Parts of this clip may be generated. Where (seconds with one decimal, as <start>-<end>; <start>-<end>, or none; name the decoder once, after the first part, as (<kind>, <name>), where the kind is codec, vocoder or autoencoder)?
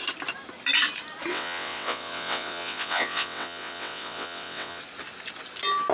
1.3-4.8 (vocoder, WaveNeXt)